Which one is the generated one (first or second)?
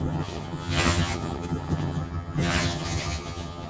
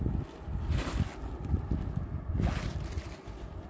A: first